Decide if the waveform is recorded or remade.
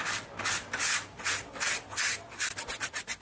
recorded